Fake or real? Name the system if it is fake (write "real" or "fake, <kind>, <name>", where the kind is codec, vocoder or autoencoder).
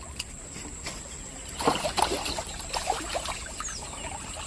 real